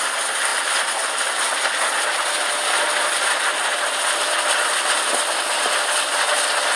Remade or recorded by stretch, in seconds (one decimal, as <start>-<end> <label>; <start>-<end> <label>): 0.0-6.8 recorded